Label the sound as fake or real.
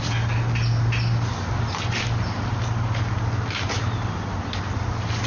real